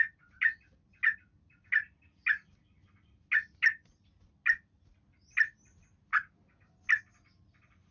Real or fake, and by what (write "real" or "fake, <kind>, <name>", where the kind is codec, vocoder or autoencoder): real